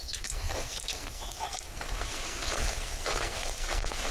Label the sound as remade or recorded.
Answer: remade